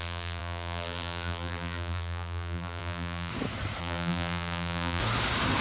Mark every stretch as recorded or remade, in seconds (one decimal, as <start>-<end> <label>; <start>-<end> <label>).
0.0-3.3 remade; 3.3-3.8 recorded; 3.8-5.0 remade; 5.0-5.6 recorded